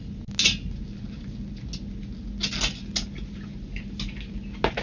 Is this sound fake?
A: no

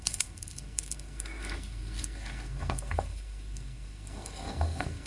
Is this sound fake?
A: yes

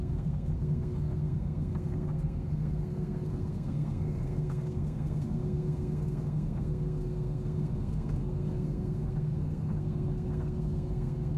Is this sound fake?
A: yes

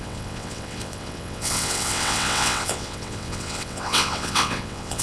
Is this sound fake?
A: yes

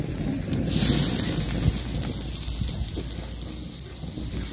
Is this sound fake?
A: no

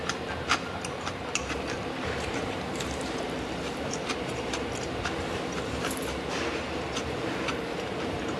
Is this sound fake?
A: yes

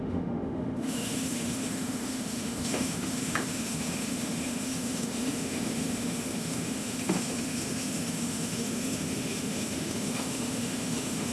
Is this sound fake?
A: yes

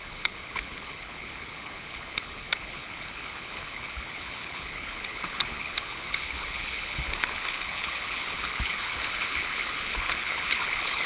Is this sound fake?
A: yes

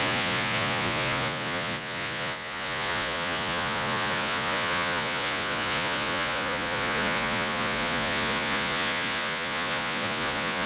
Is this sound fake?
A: yes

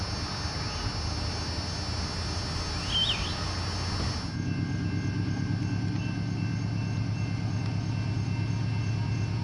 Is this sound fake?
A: no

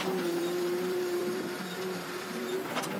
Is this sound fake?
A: yes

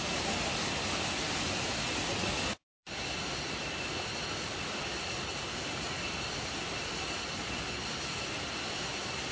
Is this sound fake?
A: no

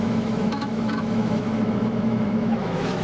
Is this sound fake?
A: yes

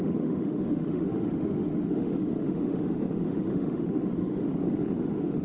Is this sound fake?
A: yes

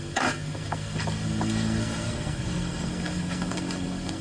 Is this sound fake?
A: yes